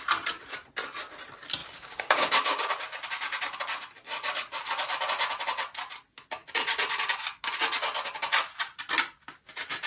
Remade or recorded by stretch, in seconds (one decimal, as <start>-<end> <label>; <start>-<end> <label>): 0.0-1.6 recorded; 1.6-2.7 remade; 2.7-9.9 recorded